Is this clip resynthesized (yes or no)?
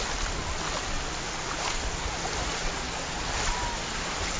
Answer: no